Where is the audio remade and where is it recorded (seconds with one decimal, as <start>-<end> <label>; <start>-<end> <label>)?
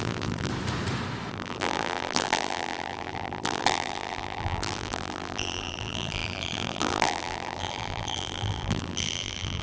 0.0-0.5 remade; 0.5-1.3 recorded; 1.3-9.6 remade